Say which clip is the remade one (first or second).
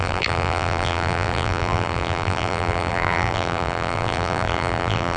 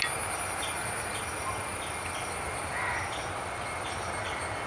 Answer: first